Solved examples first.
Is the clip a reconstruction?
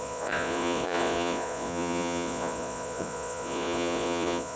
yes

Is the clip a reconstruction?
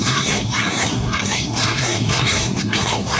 yes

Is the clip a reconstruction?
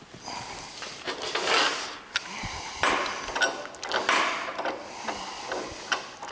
no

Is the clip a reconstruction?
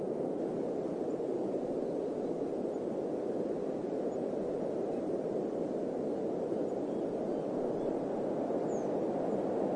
no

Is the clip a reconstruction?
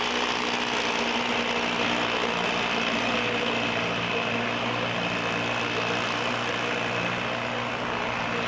no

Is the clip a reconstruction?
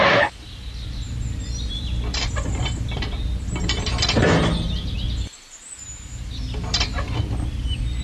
no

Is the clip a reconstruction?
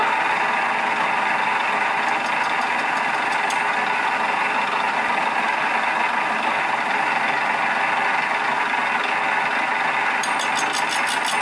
no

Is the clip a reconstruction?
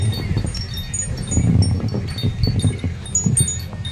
no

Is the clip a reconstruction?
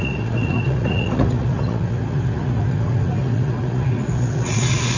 yes